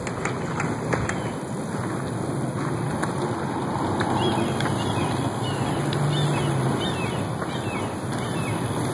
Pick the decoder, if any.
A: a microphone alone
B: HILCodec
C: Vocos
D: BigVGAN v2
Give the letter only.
A